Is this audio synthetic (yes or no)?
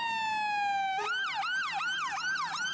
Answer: no